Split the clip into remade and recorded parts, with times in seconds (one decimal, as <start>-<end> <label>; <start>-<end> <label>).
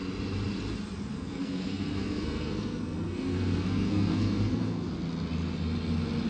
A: 0.0-1.1 recorded; 1.1-4.9 remade; 4.9-6.3 recorded